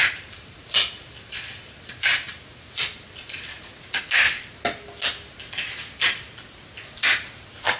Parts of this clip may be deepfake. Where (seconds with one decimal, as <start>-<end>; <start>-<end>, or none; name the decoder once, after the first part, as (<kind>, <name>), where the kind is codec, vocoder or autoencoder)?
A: 0.0-4.0 (vocoder, BigVGAN v2)